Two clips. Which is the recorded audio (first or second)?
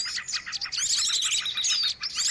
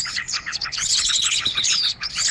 first